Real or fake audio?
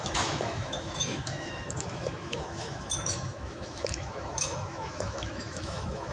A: fake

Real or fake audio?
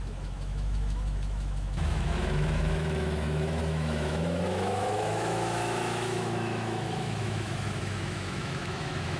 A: fake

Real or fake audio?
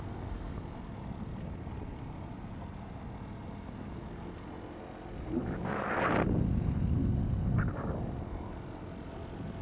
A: real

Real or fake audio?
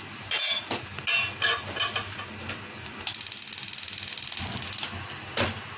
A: real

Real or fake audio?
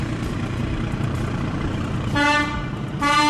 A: fake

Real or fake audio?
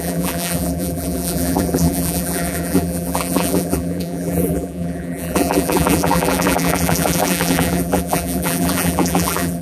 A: fake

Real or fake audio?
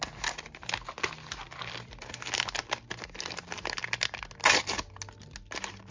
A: real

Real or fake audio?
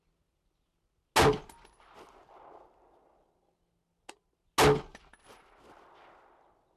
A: real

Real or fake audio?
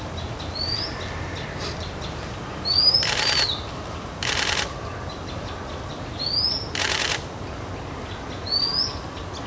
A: real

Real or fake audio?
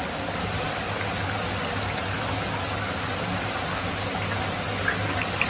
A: real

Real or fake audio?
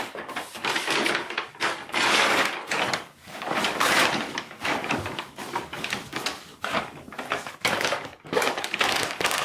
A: fake